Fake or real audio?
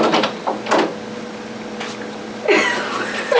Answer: real